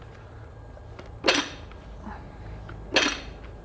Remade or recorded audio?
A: recorded